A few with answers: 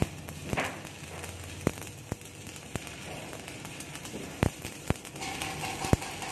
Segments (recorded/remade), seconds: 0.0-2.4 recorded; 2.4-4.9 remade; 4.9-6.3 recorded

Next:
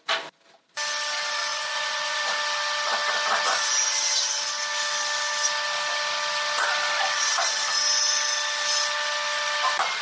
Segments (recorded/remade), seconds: 0.0-1.5 recorded; 1.5-2.2 remade; 2.2-10.0 recorded

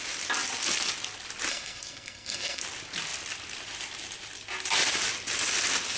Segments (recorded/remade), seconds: 0.0-1.5 recorded; 1.5-2.6 remade; 2.6-6.0 recorded

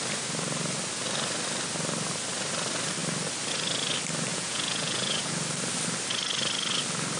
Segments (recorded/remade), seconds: 0.0-4.3 recorded; 4.3-5.3 remade; 5.3-7.2 recorded

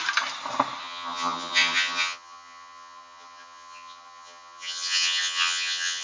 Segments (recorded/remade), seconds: 0.0-0.8 recorded; 0.8-6.0 remade